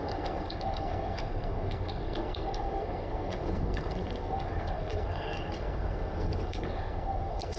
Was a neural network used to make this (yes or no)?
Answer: yes